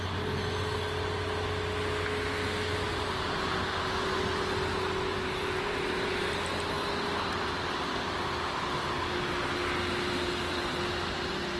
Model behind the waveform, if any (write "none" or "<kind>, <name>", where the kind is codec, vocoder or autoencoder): none